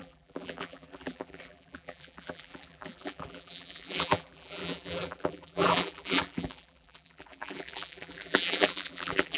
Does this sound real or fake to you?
fake